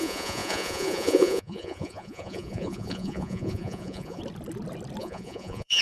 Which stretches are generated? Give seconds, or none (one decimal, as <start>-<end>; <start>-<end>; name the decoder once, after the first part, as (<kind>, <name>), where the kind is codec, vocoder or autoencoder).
0.0-4.2 (vocoder, Vocos); 5.0-5.8